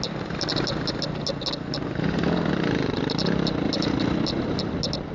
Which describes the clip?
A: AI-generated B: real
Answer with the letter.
B